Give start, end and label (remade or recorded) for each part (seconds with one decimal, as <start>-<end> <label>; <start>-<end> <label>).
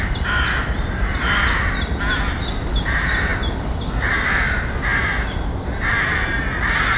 0.0-7.0 recorded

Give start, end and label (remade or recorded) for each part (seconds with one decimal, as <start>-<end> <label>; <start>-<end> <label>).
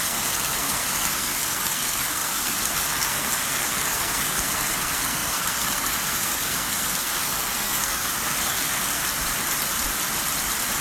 0.0-9.0 remade; 9.0-10.8 recorded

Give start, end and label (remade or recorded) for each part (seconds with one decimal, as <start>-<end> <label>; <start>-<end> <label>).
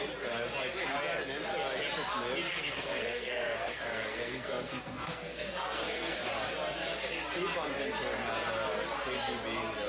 0.0-2.5 recorded; 2.5-6.3 remade; 6.3-9.9 recorded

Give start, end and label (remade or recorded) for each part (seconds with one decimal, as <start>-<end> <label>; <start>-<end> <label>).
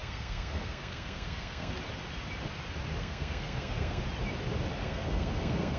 0.0-1.7 remade; 1.7-3.0 recorded; 3.0-4.0 remade; 4.0-4.7 recorded; 4.7-5.8 remade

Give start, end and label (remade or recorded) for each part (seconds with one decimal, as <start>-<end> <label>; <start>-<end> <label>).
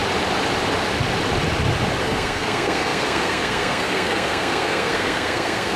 0.0-2.0 recorded; 2.0-5.8 remade